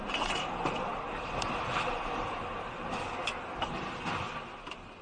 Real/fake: real